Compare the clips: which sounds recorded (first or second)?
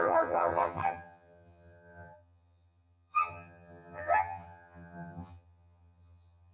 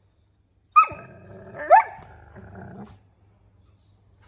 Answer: second